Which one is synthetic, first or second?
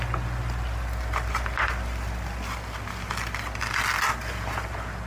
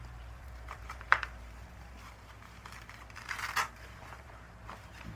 second